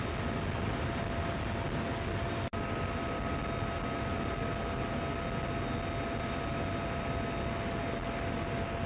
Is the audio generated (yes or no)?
no